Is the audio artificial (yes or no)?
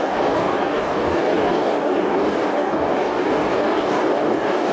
yes